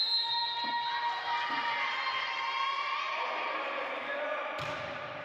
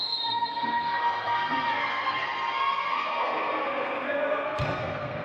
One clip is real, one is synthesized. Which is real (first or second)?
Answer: first